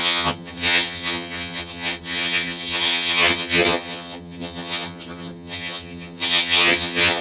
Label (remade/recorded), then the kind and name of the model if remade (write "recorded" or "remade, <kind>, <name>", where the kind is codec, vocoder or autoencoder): remade, vocoder, HiFi-GAN